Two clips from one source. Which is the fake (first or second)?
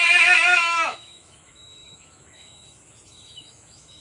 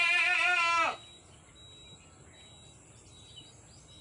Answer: first